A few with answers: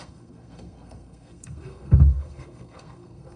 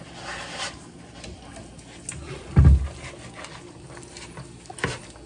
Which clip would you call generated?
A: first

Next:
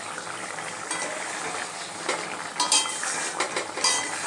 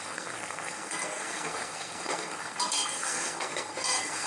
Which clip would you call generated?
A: second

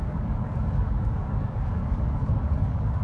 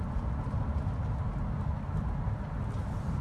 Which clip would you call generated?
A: first